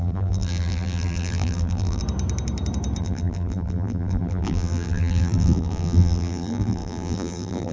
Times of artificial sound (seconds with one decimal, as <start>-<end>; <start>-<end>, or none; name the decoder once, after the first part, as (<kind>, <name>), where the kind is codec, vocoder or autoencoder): 0.0-2.0 (vocoder, BigVGAN v2); 3.0-7.7